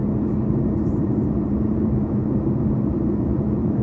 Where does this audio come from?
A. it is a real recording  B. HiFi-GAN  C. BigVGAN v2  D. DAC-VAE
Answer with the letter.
C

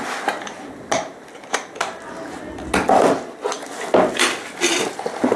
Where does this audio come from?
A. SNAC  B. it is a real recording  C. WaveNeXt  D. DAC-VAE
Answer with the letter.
B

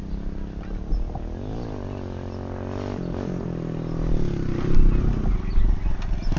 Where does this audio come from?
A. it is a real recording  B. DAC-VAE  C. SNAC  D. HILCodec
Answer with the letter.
A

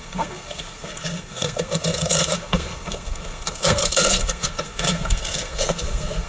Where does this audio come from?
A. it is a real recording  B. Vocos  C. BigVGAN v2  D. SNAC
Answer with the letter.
D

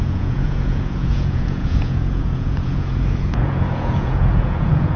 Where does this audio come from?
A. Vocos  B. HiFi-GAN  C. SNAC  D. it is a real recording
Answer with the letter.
A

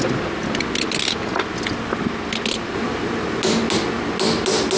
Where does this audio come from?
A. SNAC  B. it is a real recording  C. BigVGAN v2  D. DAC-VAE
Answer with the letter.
B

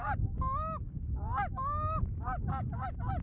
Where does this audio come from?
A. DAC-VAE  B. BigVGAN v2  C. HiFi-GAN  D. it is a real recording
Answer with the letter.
D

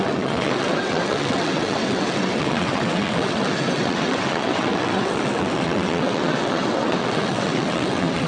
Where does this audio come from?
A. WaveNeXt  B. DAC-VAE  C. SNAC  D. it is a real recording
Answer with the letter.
A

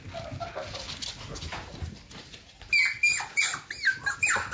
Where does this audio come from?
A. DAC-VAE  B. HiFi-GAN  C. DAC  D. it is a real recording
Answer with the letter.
D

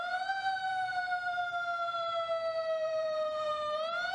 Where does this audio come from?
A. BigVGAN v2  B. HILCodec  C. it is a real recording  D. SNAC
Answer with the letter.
A